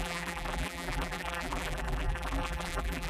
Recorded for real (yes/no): no